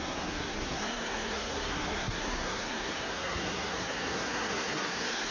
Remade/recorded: remade